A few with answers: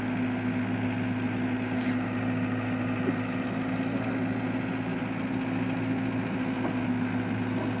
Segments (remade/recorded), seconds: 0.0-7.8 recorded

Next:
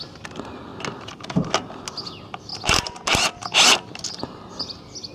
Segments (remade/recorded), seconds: 0.0-5.1 recorded

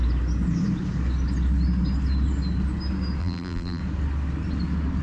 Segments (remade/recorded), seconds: 0.0-3.2 recorded; 3.2-3.8 remade; 3.8-5.0 recorded